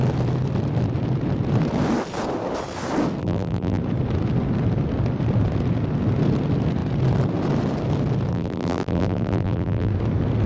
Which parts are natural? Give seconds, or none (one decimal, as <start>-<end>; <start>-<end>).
0.0-3.2; 3.8-8.3; 9.9-10.5

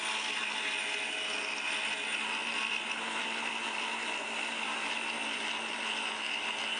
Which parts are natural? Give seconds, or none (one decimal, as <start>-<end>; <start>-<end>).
0.0-2.4; 5.8-6.8

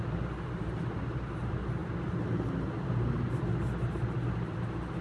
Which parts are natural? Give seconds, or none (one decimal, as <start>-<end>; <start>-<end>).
0.0-5.0

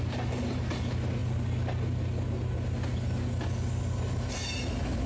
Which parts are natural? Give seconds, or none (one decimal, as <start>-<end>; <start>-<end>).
0.0-5.1

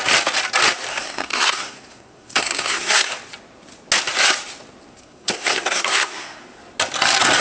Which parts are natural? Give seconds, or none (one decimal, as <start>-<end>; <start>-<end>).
0.0-0.9; 3.1-4.9; 6.4-7.4